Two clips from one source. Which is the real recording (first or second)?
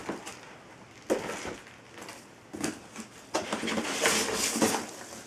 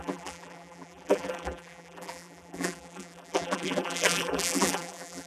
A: first